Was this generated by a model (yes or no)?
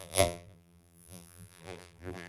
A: yes